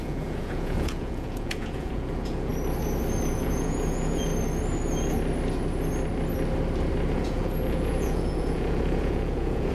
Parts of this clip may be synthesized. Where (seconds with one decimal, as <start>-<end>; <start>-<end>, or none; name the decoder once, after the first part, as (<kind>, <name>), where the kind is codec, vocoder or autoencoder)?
0.0-2.5 (vocoder, Vocos); 3.3-4.3; 7.1-9.7